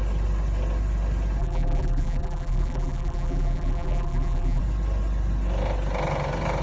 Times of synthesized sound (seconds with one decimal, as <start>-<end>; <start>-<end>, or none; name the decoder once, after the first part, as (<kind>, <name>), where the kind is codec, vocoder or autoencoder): 1.4-4.6 (vocoder, BigVGAN v2)